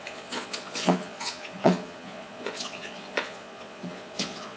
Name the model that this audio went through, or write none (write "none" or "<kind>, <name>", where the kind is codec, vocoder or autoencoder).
vocoder, Vocos